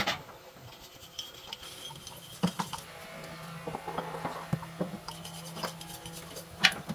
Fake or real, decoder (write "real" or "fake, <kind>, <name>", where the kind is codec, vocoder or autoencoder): real